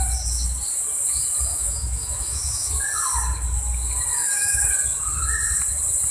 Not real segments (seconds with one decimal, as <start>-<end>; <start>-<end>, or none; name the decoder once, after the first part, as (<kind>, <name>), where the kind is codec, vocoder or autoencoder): 1.5-2.7 (autoencoder, DAC-VAE); 4.2-4.7